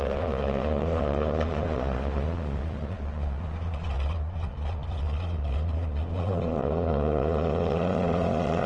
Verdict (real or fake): fake